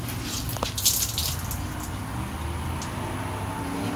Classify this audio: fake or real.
real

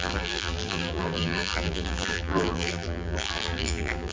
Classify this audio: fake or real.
fake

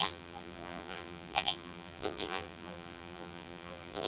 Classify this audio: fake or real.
fake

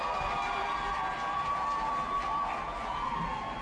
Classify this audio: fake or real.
fake